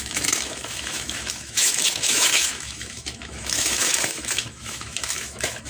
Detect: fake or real fake